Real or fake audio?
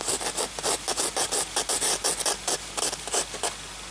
real